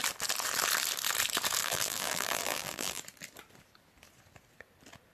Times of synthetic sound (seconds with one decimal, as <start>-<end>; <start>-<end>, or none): 1.6-3.0